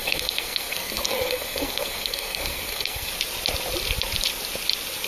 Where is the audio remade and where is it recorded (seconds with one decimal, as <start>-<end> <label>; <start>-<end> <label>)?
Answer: 0.0-3.1 remade; 3.1-5.1 recorded